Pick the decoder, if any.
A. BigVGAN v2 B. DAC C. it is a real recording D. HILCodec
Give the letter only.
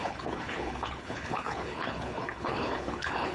D